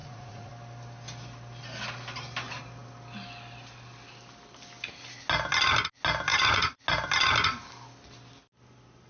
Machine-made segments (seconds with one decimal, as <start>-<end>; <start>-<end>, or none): 0.0-0.5; 6.3-6.8